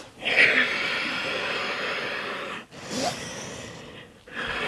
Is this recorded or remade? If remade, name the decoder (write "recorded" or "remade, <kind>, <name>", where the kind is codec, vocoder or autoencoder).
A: recorded